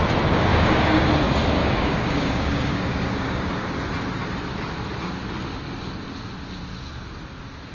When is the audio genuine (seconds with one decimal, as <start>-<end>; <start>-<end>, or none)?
0.0-0.5; 1.0-1.6; 3.5-7.7

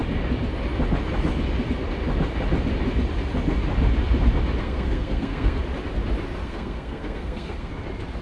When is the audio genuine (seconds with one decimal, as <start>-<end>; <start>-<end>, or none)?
0.0-4.6; 5.6-6.4; 7.7-8.2

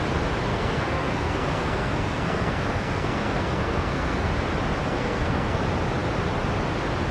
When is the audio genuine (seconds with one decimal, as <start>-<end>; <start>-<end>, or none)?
0.0-0.5; 4.3-4.8; 5.6-7.1

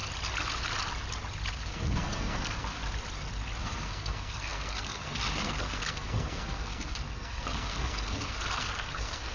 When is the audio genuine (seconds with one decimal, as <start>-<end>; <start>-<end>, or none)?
0.0-1.5; 2.8-3.6

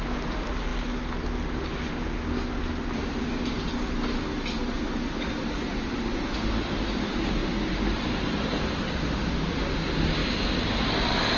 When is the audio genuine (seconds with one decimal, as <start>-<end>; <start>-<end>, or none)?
0.0-11.4